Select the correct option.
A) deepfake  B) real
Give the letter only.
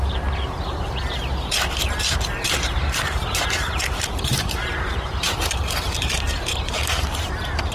A